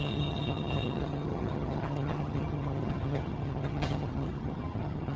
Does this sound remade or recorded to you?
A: remade